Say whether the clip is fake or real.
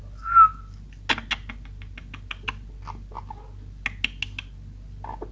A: real